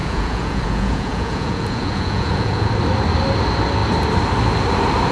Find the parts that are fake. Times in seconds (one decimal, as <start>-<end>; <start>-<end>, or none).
0.0-2.7